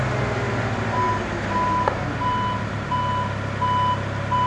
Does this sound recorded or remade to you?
recorded